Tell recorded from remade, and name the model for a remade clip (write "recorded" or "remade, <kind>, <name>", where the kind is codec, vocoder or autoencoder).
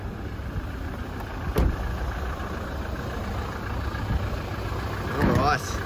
recorded